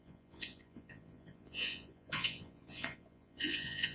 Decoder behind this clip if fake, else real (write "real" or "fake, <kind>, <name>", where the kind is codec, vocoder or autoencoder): fake, vocoder, Vocos